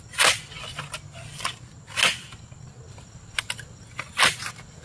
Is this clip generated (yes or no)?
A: no